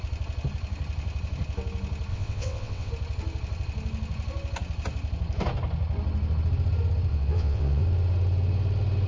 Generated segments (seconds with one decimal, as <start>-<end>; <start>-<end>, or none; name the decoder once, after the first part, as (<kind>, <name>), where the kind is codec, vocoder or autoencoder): 2.1-2.9 (vocoder, WaveNeXt); 7.1-7.8